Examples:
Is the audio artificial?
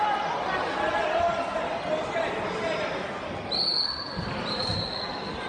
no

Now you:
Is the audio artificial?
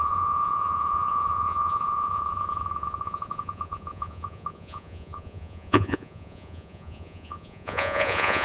yes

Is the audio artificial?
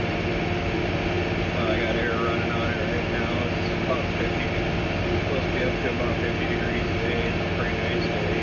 no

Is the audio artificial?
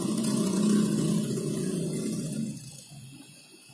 yes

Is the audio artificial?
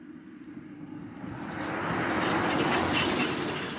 no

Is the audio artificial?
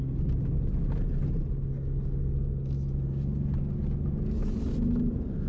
no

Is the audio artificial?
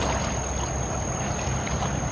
no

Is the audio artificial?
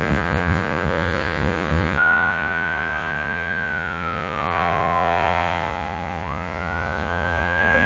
yes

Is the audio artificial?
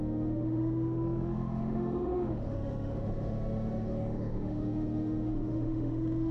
yes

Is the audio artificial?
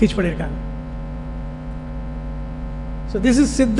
yes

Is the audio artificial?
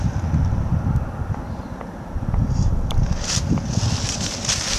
no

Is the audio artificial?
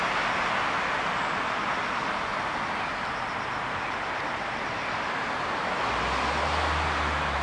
no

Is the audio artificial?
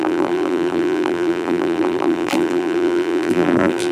yes